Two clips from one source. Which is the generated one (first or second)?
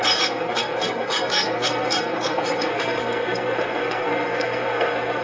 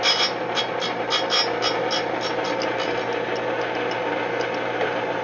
first